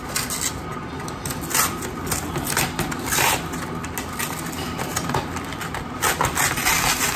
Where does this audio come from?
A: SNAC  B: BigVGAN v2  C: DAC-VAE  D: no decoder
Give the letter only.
D